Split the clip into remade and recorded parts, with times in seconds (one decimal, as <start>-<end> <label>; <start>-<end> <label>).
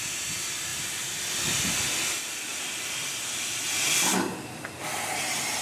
0.0-5.6 recorded